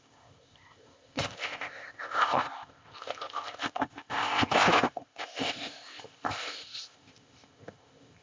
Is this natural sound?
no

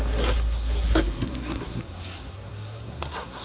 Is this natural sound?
no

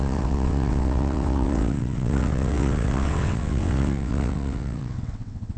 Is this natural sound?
no